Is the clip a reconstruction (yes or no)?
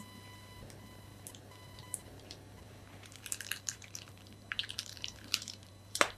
yes